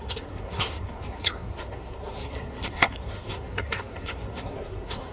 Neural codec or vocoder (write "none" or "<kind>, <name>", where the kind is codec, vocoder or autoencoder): codec, SNAC